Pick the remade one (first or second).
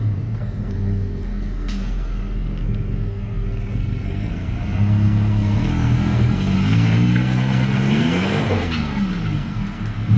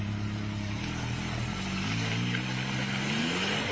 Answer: first